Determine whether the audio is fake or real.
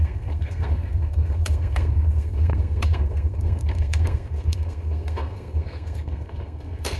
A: fake